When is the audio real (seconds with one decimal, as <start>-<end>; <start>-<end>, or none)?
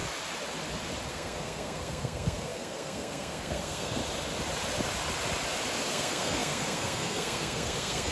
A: 0.0-1.1; 4.0-5.9